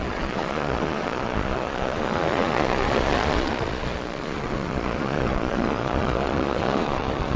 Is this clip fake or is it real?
fake